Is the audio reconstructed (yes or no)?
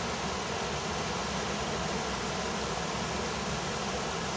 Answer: no